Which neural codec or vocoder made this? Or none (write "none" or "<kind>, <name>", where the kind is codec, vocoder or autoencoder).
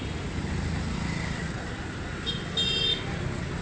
none